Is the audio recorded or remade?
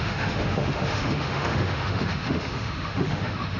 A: remade